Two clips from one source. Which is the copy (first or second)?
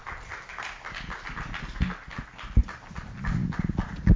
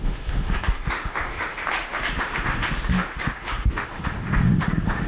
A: second